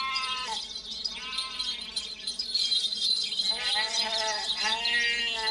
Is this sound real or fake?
real